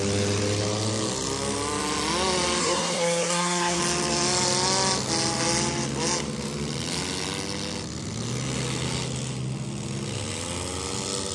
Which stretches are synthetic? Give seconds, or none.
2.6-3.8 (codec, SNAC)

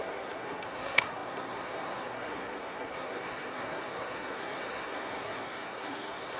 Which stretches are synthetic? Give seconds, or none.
0.0-6.4 (codec, SNAC)